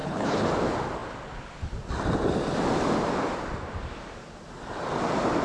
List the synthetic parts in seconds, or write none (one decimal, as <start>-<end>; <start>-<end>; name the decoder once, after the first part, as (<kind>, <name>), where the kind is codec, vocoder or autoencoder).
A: 0.0-0.5 (codec, HILCodec)